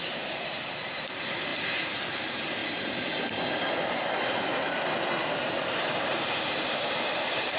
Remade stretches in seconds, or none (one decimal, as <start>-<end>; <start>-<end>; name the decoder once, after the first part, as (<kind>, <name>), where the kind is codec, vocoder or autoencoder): 0.0-2.6 (vocoder, BigVGAN v2); 6.0-7.6